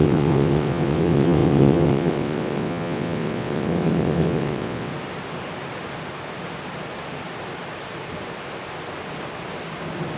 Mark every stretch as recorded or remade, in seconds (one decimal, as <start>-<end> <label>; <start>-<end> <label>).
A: 0.0-4.9 remade; 4.9-10.2 recorded